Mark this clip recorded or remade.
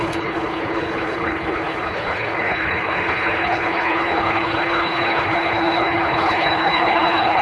remade